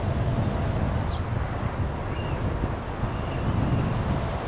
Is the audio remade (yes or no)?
no